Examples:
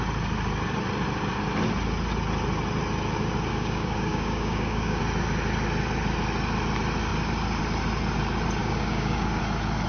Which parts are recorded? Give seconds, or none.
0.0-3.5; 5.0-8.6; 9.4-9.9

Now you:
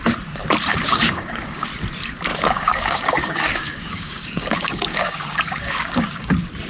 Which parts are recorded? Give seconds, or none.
0.0-0.7; 1.7-2.3; 6.3-6.7

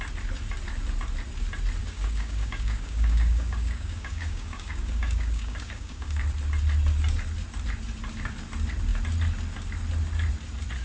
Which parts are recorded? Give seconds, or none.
0.0-1.8; 6.2-10.8